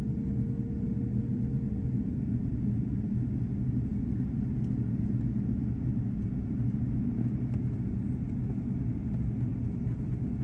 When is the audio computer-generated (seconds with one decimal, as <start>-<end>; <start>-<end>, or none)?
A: none